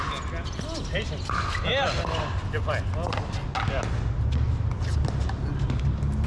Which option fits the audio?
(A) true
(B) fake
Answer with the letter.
A